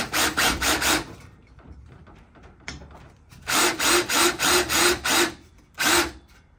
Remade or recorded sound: remade